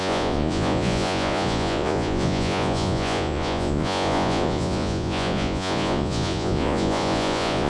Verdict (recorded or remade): remade